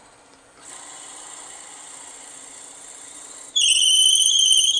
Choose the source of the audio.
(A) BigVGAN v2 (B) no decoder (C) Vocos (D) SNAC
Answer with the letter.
B